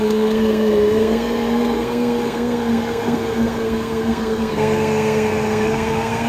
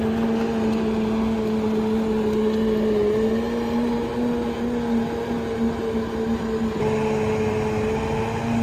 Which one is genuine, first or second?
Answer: second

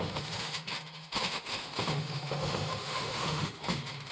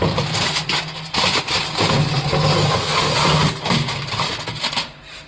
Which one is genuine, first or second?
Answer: second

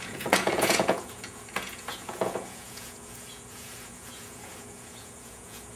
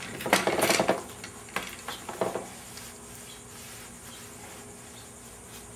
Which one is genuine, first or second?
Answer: second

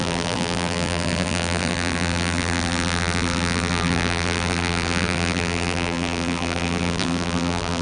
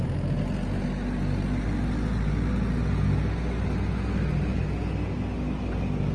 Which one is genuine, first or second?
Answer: second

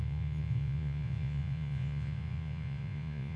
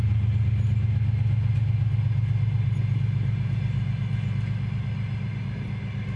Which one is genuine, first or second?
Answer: second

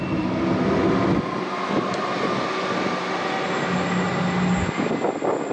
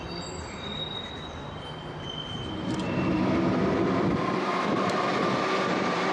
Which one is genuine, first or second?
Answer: first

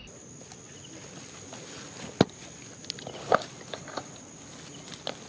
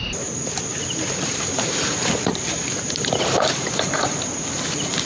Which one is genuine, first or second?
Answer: first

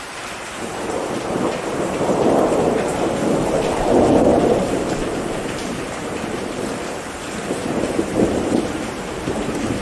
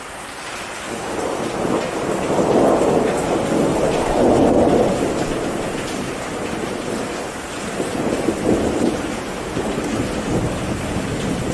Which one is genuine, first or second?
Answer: second